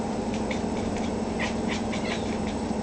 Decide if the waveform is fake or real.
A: fake